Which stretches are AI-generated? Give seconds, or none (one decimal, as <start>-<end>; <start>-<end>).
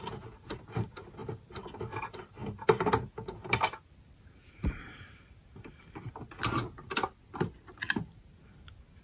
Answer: none